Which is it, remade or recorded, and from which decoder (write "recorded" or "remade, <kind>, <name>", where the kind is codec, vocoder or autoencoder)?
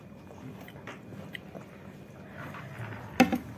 recorded